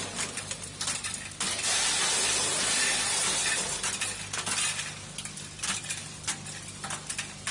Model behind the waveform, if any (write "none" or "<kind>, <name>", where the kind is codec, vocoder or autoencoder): none